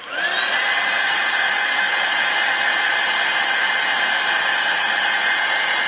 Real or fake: real